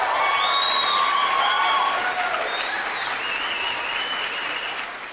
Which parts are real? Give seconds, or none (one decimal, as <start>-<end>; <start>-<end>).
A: 0.0-5.1